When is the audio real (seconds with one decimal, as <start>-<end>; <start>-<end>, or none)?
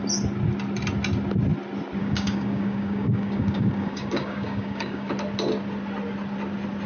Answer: 0.0-2.0; 5.1-6.9